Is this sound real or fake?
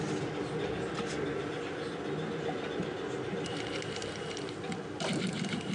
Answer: real